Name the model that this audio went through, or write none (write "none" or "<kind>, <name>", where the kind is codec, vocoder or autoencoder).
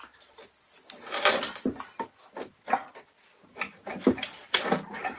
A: none